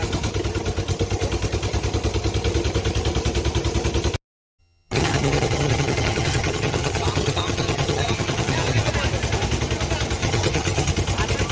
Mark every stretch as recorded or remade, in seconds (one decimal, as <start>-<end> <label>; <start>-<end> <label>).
0.0-4.6 recorded; 4.6-8.9 remade; 8.9-10.2 recorded; 10.2-10.9 remade; 10.9-11.5 recorded